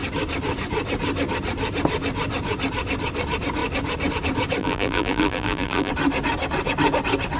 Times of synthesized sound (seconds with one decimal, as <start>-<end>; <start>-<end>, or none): 4.6-5.9